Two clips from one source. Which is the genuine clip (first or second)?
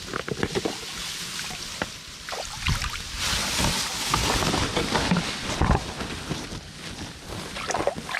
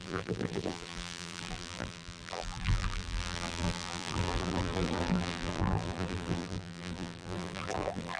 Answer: first